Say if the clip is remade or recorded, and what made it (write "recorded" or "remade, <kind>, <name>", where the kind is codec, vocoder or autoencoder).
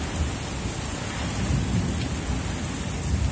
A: recorded